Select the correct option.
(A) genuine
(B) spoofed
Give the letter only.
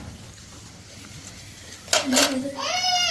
A